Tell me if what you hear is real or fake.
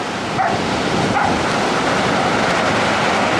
real